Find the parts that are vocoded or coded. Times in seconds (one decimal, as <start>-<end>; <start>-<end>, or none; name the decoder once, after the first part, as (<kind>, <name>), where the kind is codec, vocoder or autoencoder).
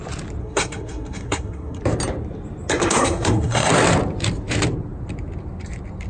0.4-1.8 (codec, SNAC); 2.7-3.7